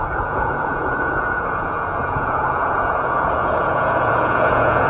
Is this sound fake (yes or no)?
yes